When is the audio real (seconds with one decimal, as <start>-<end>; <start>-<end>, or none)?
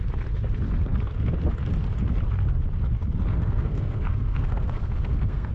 0.0-3.3